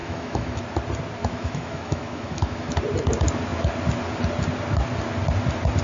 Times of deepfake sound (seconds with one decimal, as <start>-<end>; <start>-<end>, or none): 0.0-0.6; 1.2-2.7